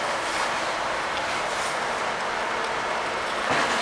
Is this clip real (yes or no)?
yes